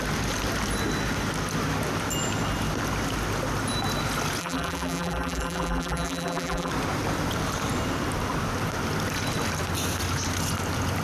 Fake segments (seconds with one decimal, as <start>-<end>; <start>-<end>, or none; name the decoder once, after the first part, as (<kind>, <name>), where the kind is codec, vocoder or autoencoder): 4.4-6.7 (vocoder, BigVGAN v2)